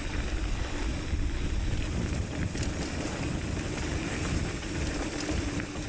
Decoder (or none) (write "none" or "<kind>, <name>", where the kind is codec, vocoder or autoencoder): none